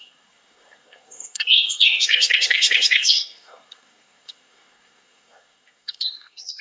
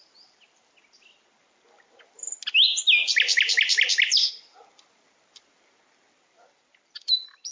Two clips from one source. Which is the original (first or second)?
second